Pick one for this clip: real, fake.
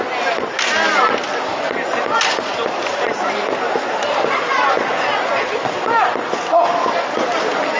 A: real